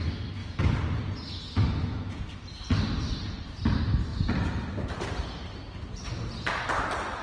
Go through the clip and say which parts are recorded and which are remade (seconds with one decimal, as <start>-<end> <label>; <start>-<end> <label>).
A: 0.0-7.2 recorded

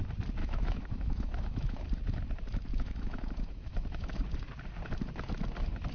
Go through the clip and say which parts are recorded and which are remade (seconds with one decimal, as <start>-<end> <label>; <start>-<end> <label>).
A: 0.0-0.4 recorded; 0.4-1.8 remade; 1.8-2.7 recorded; 2.7-4.2 remade; 4.2-5.9 recorded

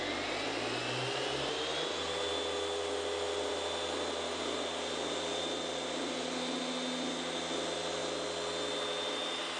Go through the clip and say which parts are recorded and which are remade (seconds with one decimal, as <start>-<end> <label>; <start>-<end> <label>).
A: 0.0-9.6 recorded

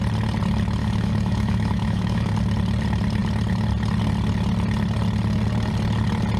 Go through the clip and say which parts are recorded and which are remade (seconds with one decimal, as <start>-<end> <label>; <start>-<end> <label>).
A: 0.0-0.8 recorded; 0.8-2.3 remade; 2.3-6.4 recorded

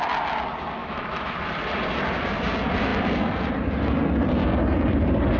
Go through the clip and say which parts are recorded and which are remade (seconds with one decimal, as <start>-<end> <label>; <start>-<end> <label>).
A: 0.0-0.8 recorded; 0.8-1.4 remade; 1.4-5.4 recorded

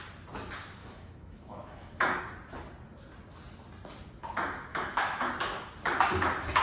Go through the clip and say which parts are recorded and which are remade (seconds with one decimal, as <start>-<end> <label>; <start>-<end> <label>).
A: 0.0-0.8 recorded; 0.8-2.2 remade; 2.2-4.7 recorded; 4.7-5.3 remade; 5.3-6.6 recorded

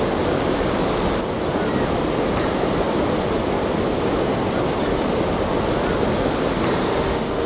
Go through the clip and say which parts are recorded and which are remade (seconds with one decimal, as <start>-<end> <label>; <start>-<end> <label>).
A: 0.0-6.9 recorded; 6.9-7.5 remade

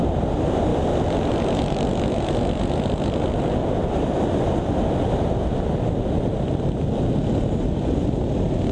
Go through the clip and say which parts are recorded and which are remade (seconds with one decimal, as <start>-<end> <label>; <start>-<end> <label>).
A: 0.0-8.7 recorded